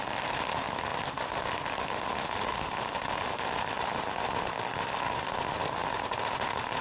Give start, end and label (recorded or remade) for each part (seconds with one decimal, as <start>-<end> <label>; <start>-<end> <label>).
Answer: 0.0-6.8 remade